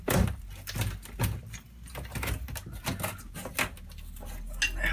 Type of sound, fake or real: real